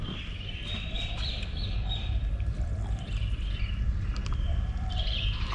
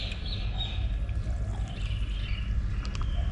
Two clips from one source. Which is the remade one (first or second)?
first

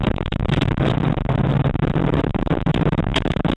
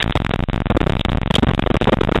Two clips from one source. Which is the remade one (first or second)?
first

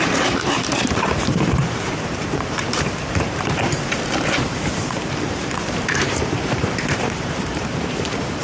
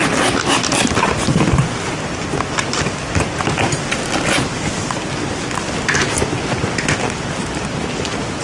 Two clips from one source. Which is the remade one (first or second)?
first